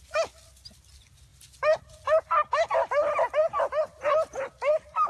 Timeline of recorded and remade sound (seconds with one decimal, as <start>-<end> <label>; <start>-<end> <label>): 0.0-5.1 recorded